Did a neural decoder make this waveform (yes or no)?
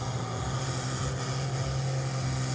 no